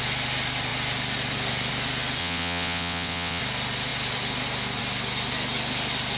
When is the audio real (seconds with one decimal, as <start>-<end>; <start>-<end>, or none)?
0.0-2.2; 3.4-6.2